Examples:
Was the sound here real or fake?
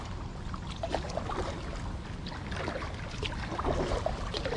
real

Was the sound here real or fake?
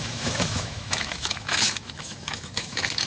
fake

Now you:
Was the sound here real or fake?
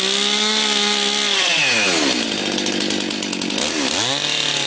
real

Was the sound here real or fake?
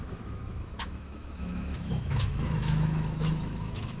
fake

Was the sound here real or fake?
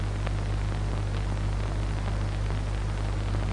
real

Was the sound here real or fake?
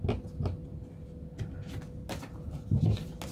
real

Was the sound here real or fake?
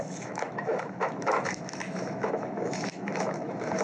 fake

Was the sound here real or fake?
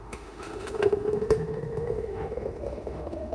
fake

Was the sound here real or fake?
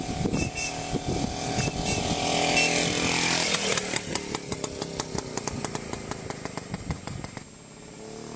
real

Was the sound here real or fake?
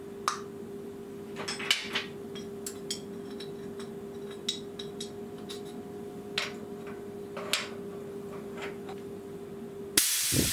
real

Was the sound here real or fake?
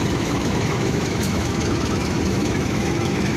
fake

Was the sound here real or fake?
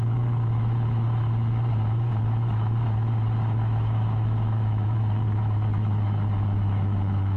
fake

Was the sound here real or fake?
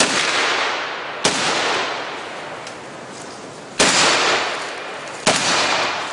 real